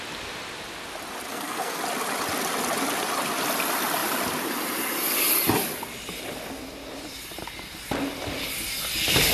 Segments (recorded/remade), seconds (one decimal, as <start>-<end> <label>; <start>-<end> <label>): 0.0-1.3 recorded; 1.3-1.8 remade; 1.8-9.3 recorded